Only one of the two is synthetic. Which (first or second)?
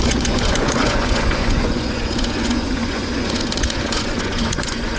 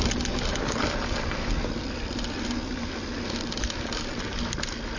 first